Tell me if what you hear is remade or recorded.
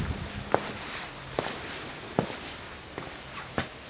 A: recorded